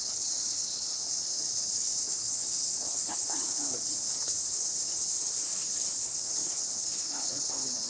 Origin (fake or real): fake